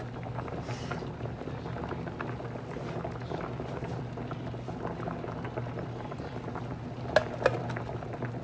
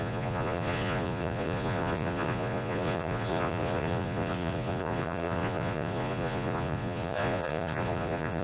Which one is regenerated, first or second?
second